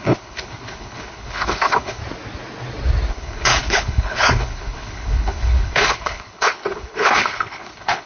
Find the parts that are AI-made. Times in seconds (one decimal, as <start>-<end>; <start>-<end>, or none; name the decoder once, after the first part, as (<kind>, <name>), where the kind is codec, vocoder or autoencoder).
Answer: 0.0-2.0 (codec, HILCodec); 3.1-8.1